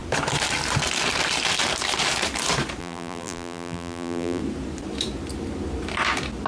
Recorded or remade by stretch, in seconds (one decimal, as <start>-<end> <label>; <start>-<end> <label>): 0.0-2.8 recorded; 2.8-4.4 remade; 4.4-6.5 recorded